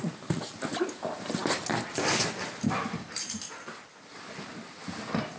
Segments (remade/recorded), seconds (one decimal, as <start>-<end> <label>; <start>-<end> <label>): 0.0-5.4 recorded